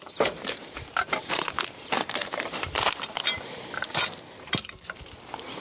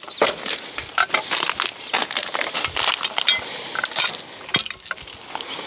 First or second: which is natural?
second